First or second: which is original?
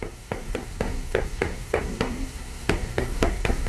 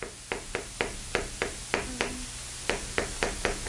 second